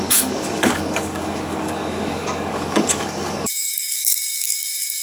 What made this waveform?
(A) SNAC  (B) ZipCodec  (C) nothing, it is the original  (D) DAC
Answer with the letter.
D